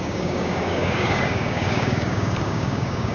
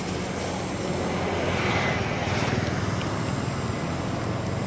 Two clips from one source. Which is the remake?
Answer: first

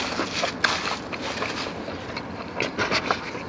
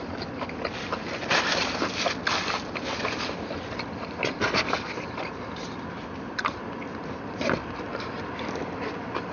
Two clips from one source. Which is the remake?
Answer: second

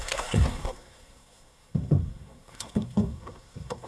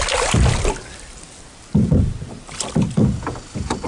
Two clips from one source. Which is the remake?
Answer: first